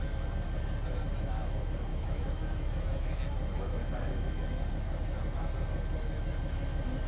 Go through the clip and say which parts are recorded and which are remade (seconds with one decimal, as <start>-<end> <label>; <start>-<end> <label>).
0.0-1.9 recorded; 1.9-3.2 remade; 3.2-7.1 recorded